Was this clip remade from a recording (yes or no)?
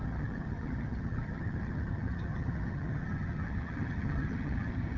yes